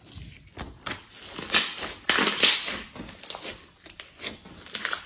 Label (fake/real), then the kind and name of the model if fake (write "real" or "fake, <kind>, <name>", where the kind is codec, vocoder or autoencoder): real